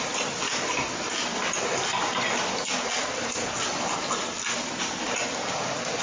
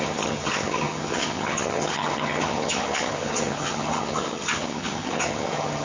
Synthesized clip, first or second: second